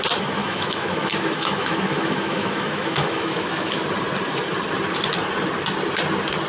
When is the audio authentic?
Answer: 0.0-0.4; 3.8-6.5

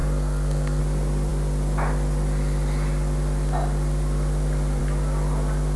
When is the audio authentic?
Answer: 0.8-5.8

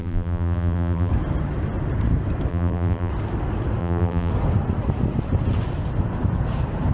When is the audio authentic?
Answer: 1.1-2.5; 3.1-3.8; 4.3-6.9

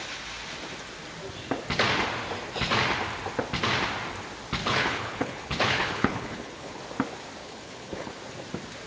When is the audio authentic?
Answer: 0.0-4.6; 6.8-7.4; 8.2-8.9

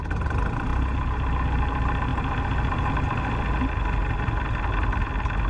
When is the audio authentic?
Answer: 0.0-5.5

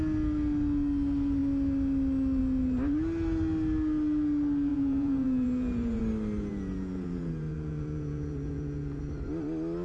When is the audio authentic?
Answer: 0.0-4.7; 6.0-6.5; 9.0-9.8